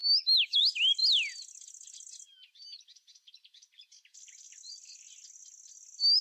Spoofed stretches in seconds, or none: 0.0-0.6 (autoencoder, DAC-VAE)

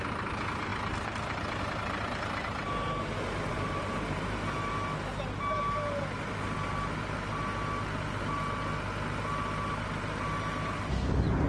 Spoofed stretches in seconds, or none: 3.5-4.7 (vocoder, BigVGAN v2)

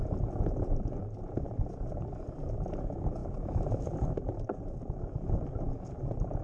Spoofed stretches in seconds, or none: 1.0-2.4 (vocoder, BigVGAN v2); 3.2-4.6

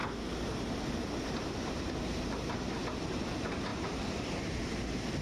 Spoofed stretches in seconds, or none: 3.7-4.4 (vocoder, BigVGAN v2)